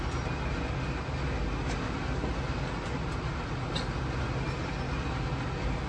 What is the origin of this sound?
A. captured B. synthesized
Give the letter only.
A